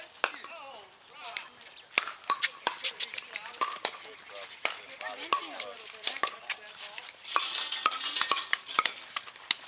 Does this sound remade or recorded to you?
recorded